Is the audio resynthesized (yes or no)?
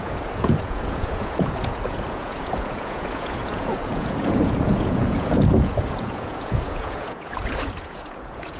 yes